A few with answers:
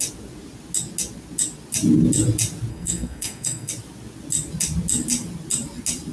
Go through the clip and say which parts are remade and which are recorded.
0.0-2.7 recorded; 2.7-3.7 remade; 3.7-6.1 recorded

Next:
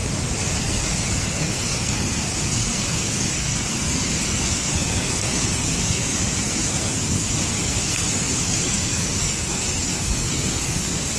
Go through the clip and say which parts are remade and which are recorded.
0.0-0.6 recorded; 0.6-11.2 remade